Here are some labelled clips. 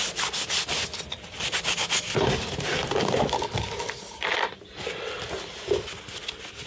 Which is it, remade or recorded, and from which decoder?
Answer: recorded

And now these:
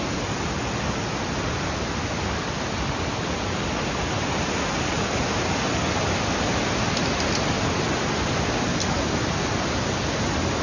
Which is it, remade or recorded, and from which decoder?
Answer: recorded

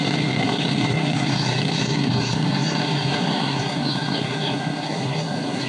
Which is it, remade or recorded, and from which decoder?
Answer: remade, codec, SNAC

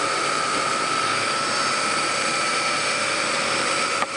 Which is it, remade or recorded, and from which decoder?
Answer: remade, vocoder, BigVGAN v2